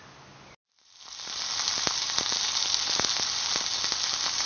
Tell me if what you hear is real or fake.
real